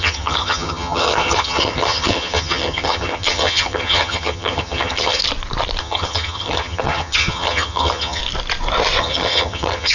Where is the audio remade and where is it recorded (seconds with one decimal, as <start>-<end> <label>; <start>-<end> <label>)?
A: 0.0-5.2 remade; 5.2-5.8 recorded; 5.8-8.2 remade; 8.2-9.0 recorded; 9.0-9.9 remade